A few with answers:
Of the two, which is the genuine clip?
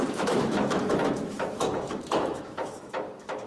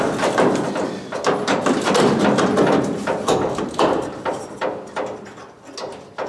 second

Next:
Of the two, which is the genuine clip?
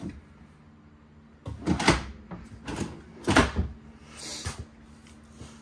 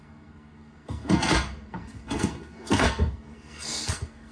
first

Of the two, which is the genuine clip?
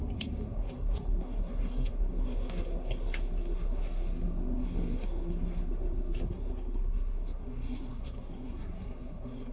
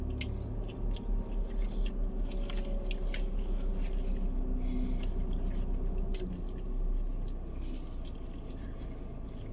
second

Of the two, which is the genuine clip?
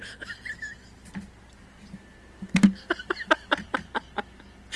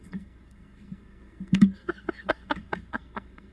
first